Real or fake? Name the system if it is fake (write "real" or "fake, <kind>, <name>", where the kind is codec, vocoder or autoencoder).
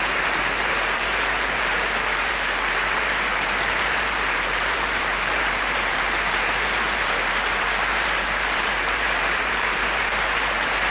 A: fake, vocoder, BigVGAN v2